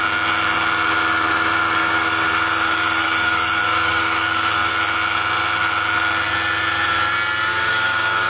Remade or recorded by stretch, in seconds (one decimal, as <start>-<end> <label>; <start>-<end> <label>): 0.0-1.8 recorded; 1.8-4.7 remade; 4.7-7.5 recorded; 7.5-8.3 remade